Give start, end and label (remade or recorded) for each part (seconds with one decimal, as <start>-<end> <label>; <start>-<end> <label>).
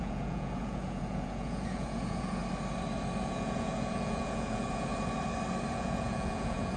0.0-2.4 remade; 2.4-3.2 recorded; 3.2-4.9 remade; 4.9-5.7 recorded; 5.7-6.8 remade